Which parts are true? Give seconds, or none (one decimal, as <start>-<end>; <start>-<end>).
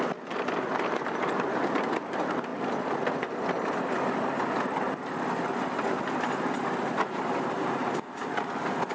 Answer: 0.0-8.9